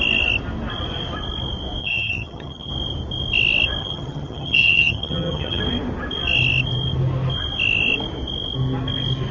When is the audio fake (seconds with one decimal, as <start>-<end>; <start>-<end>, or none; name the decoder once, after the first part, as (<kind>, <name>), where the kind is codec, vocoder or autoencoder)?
1.8-2.7 (vocoder, HiFi-GAN); 3.8-5.6